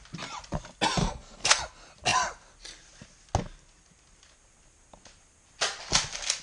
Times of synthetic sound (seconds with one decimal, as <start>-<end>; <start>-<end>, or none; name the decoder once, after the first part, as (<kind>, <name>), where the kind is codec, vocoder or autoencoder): 1.0-1.6 (codec, SNAC)